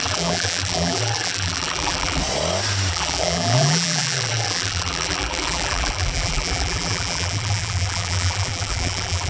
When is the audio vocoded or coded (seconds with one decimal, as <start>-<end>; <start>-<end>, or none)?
0.0-2.2; 2.9-9.3